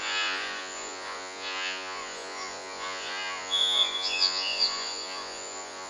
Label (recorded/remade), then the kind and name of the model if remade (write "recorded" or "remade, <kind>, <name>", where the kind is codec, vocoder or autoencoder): remade, vocoder, Vocos